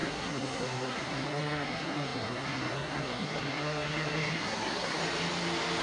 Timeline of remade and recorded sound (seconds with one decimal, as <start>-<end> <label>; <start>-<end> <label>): 0.0-5.0 remade; 5.0-5.8 recorded